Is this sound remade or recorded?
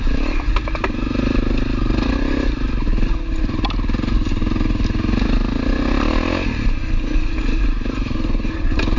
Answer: recorded